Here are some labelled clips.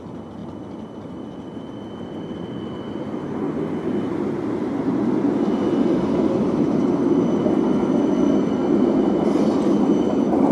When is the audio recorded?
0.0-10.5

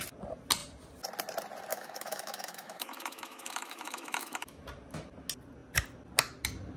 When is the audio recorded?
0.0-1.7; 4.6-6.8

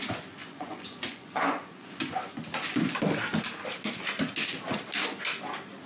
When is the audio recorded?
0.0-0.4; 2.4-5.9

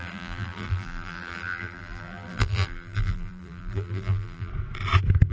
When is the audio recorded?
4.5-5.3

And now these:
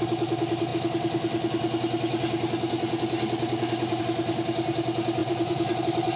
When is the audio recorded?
0.0-5.2; 5.8-6.2